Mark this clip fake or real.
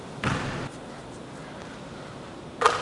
real